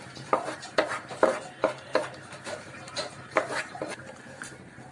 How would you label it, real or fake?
fake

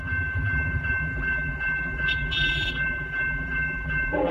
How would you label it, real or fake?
fake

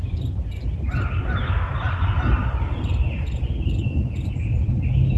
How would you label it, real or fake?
real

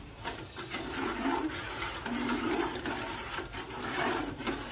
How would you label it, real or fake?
fake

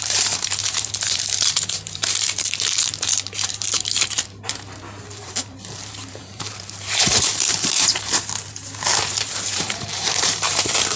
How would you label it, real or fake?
fake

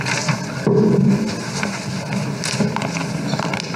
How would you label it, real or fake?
real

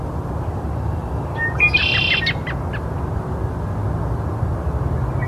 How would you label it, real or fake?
real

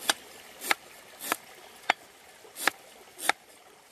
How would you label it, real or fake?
real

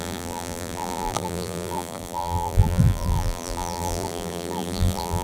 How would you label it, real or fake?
fake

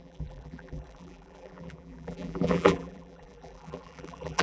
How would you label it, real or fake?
fake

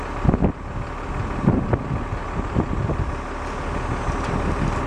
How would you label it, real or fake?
real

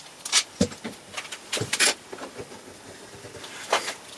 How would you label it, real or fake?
real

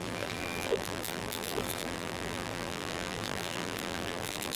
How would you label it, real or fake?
fake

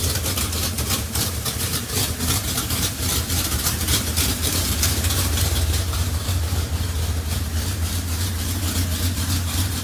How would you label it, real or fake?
fake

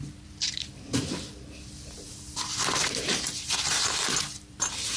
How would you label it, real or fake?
fake